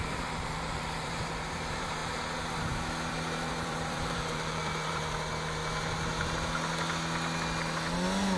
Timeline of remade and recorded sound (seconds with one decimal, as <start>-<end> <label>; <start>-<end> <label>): 0.0-2.0 remade; 2.0-3.1 recorded; 3.1-5.0 remade; 5.0-8.4 recorded